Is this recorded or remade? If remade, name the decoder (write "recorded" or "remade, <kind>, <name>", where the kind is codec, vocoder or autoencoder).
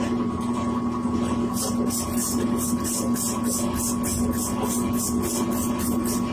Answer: recorded